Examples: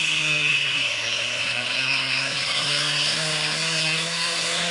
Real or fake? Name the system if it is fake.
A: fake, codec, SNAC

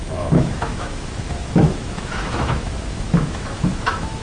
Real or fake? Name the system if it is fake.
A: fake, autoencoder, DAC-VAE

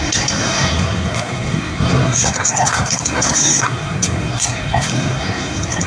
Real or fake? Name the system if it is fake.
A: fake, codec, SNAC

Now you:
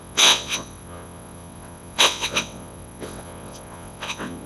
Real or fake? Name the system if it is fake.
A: fake, vocoder, WaveNeXt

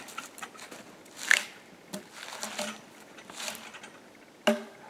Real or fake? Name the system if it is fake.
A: real